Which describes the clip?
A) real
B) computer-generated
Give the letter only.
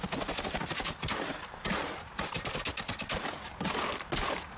A